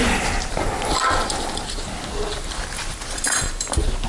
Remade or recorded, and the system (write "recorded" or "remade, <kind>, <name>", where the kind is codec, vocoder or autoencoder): recorded